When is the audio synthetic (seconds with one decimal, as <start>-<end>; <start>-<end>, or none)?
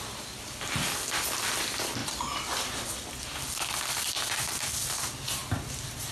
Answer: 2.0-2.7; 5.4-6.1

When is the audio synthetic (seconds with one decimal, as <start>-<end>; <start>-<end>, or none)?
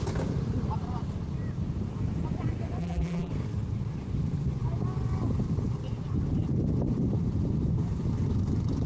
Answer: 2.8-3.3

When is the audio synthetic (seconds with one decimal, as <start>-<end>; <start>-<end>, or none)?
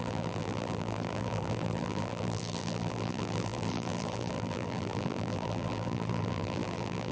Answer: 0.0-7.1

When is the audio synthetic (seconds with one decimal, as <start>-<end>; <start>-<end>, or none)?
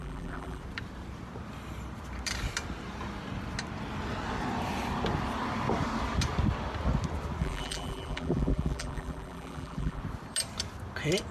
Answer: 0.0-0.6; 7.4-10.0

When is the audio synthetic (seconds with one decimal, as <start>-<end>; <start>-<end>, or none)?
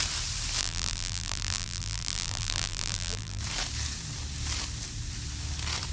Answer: 0.6-3.4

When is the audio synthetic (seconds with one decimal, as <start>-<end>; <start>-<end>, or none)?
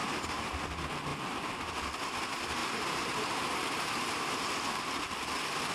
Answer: 0.0-0.6; 1.1-1.7; 2.6-4.8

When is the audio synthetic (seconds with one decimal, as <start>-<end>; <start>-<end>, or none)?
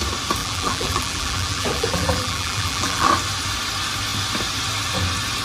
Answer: 0.4-3.1